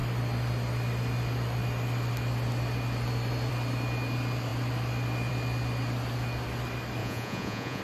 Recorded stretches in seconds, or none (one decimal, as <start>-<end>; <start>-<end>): 0.0-7.0